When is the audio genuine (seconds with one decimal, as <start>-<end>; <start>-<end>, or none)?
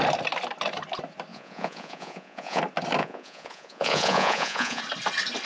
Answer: 0.0-1.3; 2.6-3.0; 4.8-5.5